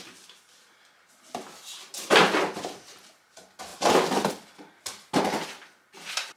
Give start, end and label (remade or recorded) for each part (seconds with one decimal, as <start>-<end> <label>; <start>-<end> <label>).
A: 0.0-6.4 recorded